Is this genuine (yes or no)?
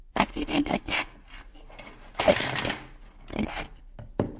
yes